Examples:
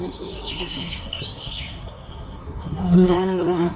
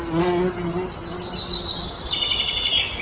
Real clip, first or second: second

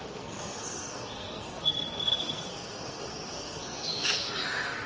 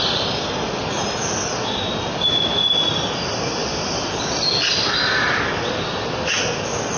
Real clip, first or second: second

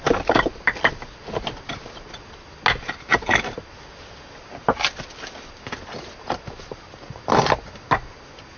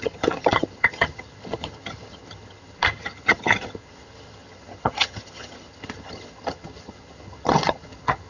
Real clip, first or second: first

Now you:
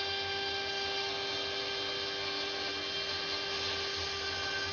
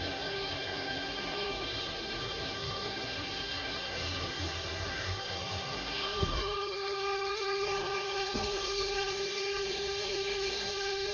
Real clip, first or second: first